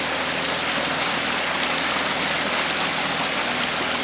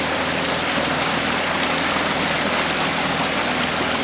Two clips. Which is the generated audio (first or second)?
second